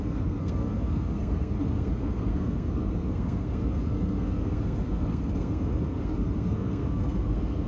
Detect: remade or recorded remade